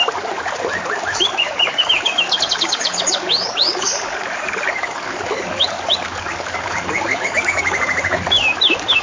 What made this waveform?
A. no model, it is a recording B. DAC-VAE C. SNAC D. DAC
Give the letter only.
D